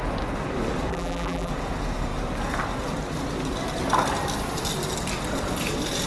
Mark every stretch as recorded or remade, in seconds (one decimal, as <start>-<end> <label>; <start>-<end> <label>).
0.0-0.9 recorded; 0.9-1.5 remade; 1.5-6.1 recorded